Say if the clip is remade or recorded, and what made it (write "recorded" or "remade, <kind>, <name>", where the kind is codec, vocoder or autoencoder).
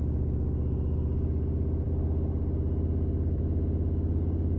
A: recorded